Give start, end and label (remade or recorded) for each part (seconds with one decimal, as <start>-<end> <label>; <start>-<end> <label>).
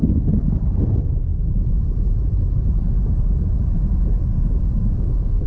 0.0-5.5 recorded